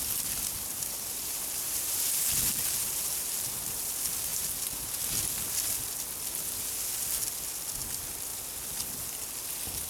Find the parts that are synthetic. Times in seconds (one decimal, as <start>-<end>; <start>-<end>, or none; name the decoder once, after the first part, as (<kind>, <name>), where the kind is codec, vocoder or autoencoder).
0.7-3.8 (vocoder, BigVGAN v2); 4.3-5.0